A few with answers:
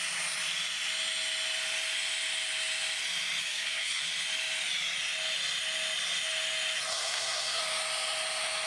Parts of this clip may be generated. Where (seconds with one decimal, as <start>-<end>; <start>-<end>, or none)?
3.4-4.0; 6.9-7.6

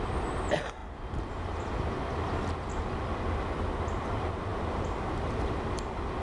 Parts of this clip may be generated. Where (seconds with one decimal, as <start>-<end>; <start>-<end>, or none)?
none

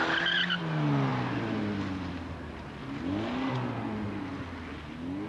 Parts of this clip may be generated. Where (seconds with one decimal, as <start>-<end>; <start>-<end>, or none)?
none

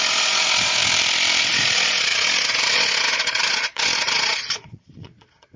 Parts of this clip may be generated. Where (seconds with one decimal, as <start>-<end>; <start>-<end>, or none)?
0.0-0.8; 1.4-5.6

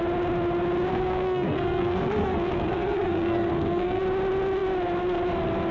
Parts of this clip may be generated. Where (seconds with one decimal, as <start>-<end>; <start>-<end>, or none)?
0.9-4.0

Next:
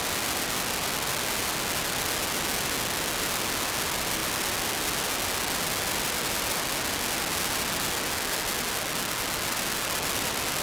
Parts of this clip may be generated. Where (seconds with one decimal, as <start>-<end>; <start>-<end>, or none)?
none